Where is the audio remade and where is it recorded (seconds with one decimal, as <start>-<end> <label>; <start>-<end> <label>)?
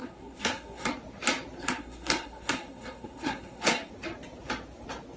0.0-0.9 remade; 0.9-1.6 recorded; 1.6-3.9 remade; 3.9-5.2 recorded